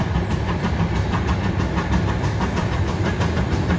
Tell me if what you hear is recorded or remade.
recorded